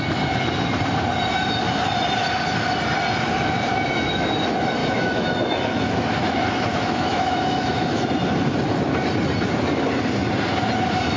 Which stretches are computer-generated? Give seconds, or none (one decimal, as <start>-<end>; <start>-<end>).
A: 3.7-4.3; 4.8-8.1